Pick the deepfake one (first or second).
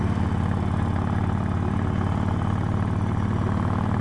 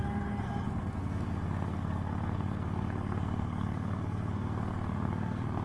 second